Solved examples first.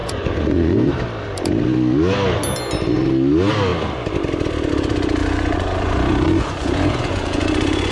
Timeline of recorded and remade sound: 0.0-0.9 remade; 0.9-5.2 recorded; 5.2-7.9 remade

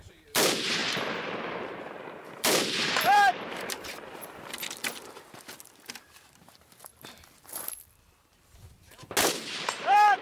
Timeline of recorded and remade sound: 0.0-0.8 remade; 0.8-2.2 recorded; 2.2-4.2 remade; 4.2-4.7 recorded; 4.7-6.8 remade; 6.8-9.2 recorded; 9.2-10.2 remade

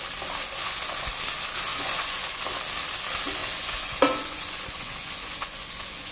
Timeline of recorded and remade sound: 0.0-0.6 recorded; 0.6-1.1 remade; 1.1-1.7 recorded; 1.7-2.4 remade; 2.4-3.4 recorded; 3.4-6.1 remade

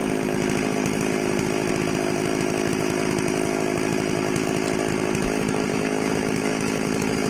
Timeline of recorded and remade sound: 0.0-5.7 recorded; 5.7-7.3 remade

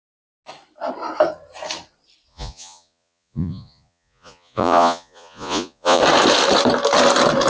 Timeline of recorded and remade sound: 0.0-2.3 recorded; 2.3-6.0 remade; 6.0-7.5 recorded

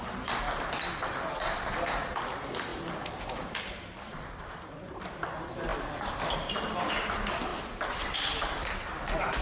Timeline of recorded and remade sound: 0.0-2.7 recorded; 2.7-3.7 remade; 3.7-7.5 recorded; 7.5-9.4 remade

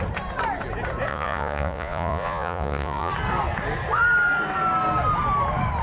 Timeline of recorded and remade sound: 0.0-1.1 recorded; 1.1-3.1 remade; 3.1-5.8 recorded

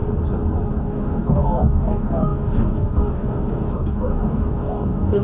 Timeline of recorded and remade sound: 0.0-0.7 recorded; 0.7-5.2 remade